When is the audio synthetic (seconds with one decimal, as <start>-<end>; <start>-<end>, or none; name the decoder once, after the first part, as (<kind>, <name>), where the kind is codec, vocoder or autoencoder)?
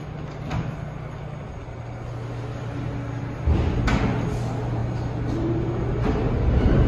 none